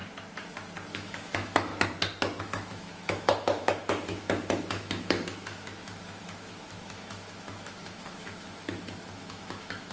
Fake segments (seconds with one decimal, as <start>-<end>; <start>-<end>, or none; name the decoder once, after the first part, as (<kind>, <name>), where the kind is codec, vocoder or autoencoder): 0.9-1.7 (autoencoder, DAC-VAE); 2.4-9.9